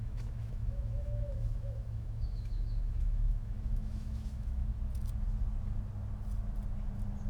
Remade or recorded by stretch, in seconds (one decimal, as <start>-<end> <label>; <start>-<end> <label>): 0.0-4.7 remade; 4.7-7.3 recorded